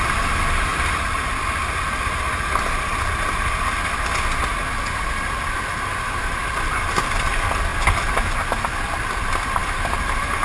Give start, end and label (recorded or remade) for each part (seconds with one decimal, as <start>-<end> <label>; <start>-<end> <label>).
0.0-10.4 recorded